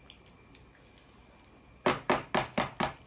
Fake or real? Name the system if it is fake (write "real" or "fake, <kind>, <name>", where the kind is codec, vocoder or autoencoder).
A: real